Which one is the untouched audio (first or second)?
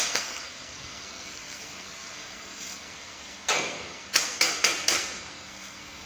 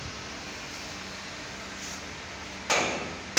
second